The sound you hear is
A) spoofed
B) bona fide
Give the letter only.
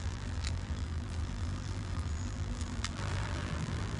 A